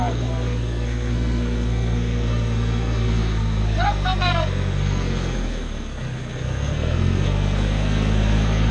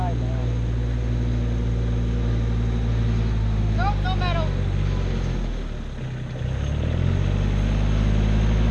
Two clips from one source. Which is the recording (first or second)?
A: second